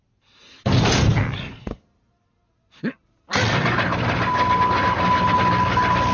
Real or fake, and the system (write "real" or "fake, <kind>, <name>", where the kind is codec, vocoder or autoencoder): real